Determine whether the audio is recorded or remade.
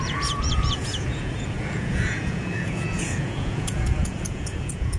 remade